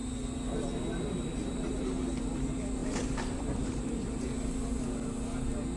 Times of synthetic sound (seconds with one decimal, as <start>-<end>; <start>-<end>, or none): 2.8-4.3